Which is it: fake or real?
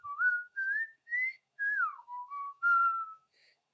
fake